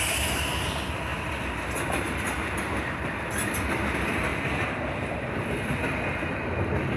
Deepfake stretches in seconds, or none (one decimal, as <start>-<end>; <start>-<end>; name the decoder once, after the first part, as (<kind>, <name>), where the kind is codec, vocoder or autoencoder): none